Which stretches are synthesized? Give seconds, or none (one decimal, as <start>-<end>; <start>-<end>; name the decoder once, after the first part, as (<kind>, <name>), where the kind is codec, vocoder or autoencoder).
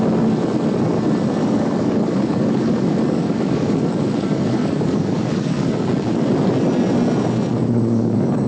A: 1.4-6.5 (codec, DAC); 7.5-8.5